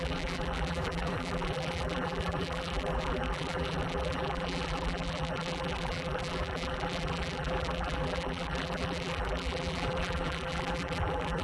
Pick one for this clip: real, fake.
fake